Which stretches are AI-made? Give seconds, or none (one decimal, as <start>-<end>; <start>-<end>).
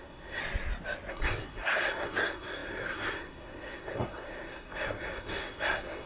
0.0-0.4; 1.1-6.1